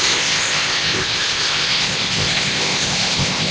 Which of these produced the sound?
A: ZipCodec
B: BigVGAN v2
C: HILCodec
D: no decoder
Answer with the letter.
A